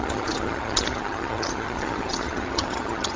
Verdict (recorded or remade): remade